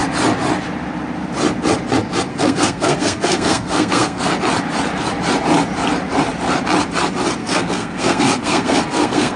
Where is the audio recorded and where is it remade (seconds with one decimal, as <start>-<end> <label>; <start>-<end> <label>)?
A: 0.0-2.3 recorded; 2.3-4.3 remade; 4.3-7.4 recorded; 7.4-9.4 remade